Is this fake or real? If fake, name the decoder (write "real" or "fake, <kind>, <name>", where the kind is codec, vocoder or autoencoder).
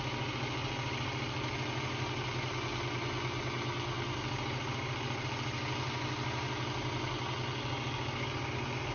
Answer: real